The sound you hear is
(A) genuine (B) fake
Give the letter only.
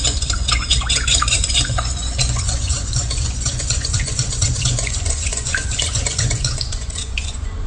B